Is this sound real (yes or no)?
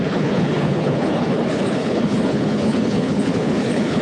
no